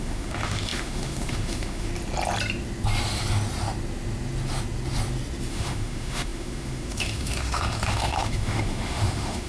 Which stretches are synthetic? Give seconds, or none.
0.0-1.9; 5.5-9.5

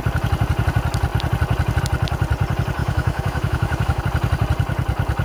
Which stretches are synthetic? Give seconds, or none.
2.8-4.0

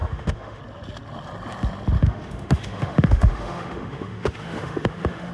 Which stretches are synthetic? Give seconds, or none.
0.0-0.6; 2.0-5.3

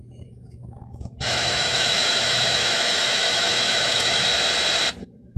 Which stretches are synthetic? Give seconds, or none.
0.0-4.3; 5.0-5.4